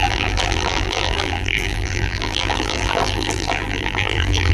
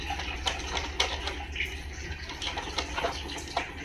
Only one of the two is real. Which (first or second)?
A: second